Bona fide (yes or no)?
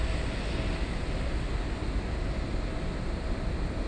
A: yes